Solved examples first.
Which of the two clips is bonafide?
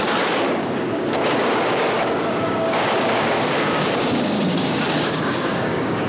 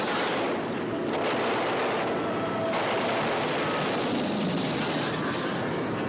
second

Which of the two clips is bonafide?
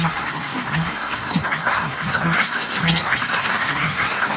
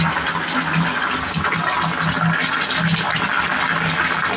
second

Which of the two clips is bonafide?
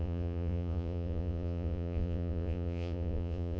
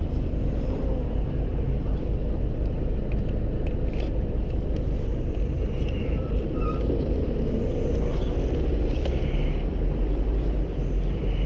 second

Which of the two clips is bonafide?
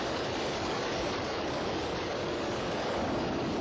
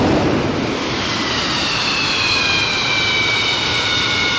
second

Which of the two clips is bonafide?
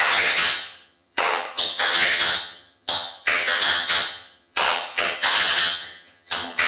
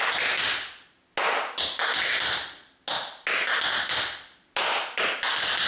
second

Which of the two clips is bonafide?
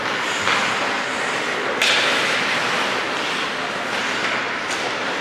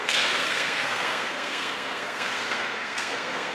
first